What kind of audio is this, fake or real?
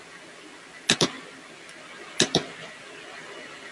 real